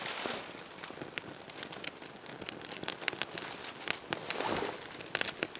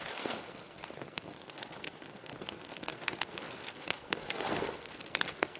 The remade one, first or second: second